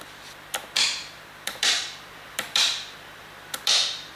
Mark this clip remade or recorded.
remade